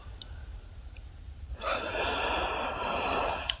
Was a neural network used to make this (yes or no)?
yes